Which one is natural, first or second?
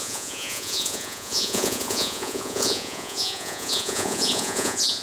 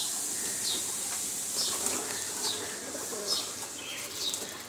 second